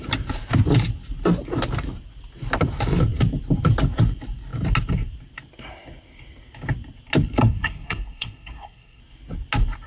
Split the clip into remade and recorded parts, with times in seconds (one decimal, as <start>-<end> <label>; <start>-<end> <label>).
0.0-7.4 recorded; 7.4-9.0 remade; 9.0-9.9 recorded